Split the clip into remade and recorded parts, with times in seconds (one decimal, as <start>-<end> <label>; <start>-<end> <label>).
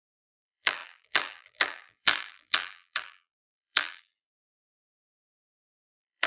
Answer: 0.0-6.3 remade